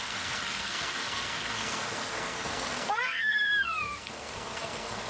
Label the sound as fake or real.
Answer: fake